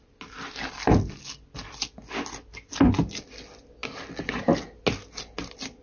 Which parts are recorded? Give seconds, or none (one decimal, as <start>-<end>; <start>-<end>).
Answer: 0.0-5.8